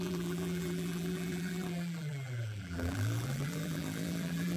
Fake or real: fake